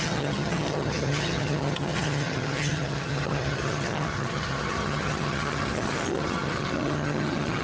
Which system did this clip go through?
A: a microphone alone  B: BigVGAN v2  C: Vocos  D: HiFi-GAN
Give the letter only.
D